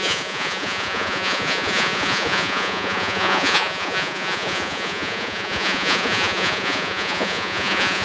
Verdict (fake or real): fake